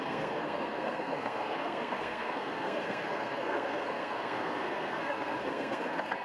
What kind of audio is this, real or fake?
fake